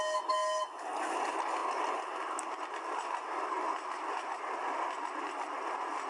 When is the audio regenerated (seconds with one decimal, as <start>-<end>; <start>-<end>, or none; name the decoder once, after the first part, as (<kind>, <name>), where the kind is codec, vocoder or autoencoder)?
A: none